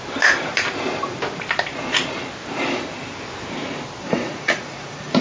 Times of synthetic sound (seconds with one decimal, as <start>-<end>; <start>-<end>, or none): 4.0-5.2